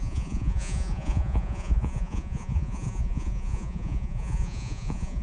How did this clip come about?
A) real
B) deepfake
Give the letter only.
B